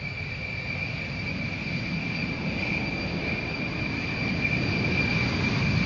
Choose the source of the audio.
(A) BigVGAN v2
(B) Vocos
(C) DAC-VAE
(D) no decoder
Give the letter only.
D